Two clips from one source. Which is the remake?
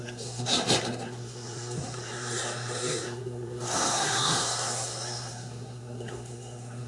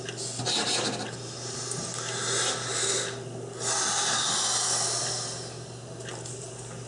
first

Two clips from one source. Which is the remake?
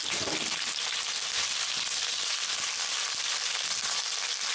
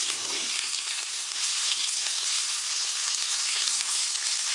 second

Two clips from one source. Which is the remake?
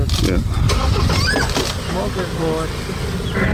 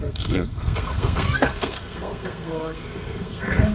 second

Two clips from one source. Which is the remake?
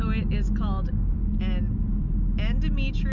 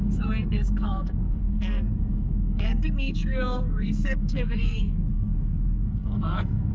second